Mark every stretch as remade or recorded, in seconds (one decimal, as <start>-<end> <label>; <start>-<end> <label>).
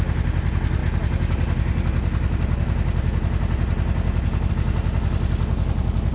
0.0-6.1 recorded